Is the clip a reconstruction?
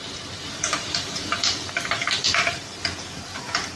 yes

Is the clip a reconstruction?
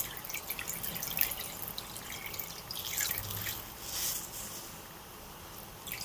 no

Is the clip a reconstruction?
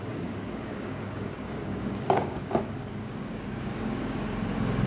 yes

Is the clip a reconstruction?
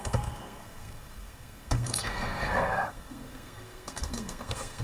yes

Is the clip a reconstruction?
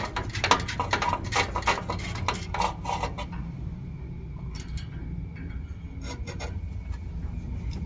no